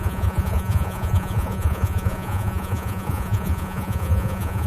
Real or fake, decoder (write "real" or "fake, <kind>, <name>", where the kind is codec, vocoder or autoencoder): fake, vocoder, Vocos